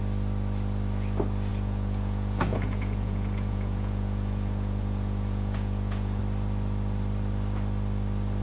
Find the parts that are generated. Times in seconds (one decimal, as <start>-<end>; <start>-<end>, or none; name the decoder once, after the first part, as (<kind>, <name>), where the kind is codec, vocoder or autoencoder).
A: 1.5-6.2 (vocoder, Vocos)